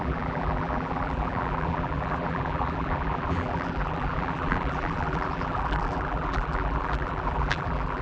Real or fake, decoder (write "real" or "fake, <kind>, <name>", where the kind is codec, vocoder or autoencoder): fake, vocoder, BigVGAN v2